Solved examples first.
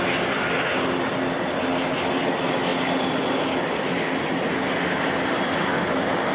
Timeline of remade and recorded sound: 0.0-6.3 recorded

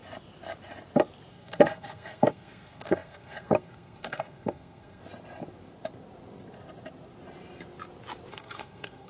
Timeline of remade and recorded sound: 0.0-1.3 recorded; 1.3-5.0 remade; 5.0-8.3 recorded; 8.3-9.1 remade

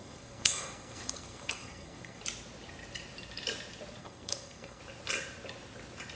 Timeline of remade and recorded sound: 0.0-2.2 remade; 2.2-4.0 recorded; 4.0-4.8 remade; 4.8-6.2 recorded

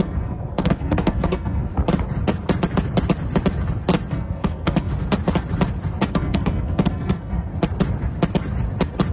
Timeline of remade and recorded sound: 0.0-1.7 remade; 1.7-4.1 recorded; 4.1-4.9 remade; 4.9-6.1 recorded; 6.1-7.5 remade; 7.5-9.1 recorded